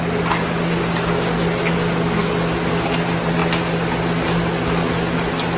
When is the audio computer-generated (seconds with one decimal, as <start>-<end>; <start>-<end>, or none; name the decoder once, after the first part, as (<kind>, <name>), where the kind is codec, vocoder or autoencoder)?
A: none